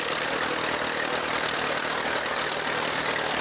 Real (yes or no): yes